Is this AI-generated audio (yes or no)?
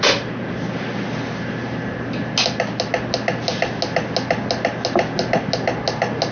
no